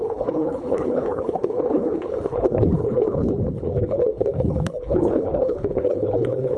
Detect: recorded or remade remade